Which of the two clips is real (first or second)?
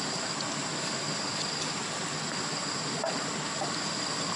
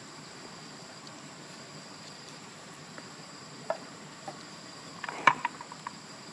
first